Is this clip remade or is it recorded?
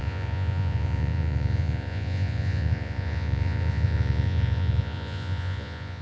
remade